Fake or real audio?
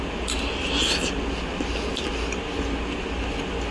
real